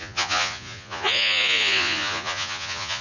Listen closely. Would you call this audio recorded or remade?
remade